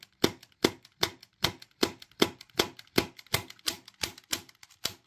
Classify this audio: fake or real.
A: real